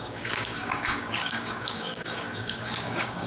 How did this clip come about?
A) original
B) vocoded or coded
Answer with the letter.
B